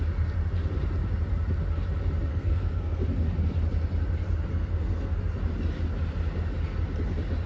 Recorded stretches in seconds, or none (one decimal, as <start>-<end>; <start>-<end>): 0.0-2.3; 3.0-4.5; 5.2-7.5